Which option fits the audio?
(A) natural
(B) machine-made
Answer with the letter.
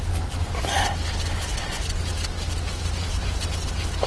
A